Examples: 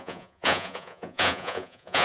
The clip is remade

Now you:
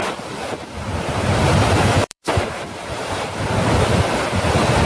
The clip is remade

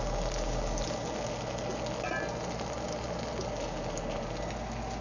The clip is recorded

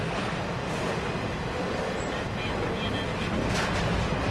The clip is recorded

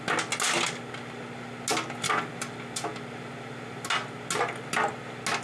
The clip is recorded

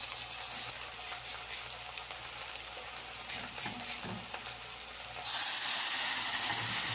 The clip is recorded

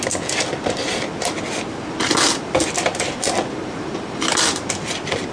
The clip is recorded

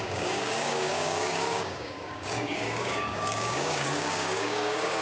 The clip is remade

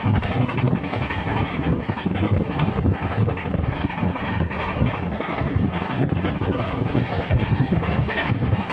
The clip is remade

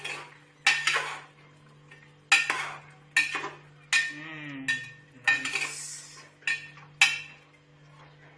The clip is recorded